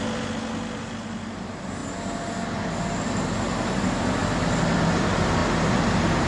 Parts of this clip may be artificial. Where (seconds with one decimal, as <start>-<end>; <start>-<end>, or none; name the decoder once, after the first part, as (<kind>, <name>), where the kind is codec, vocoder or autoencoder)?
none